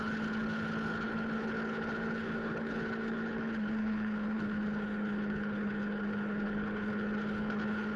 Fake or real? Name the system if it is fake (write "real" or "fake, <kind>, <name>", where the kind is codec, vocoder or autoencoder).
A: fake, codec, HILCodec